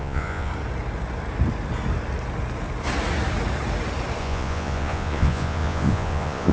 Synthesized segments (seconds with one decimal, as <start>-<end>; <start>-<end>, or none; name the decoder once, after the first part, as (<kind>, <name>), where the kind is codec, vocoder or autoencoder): 0.0-0.5 (vocoder, Vocos); 4.2-6.5